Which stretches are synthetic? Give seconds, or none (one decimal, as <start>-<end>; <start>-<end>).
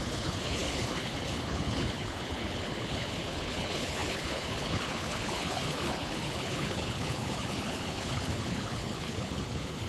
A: 0.0-9.9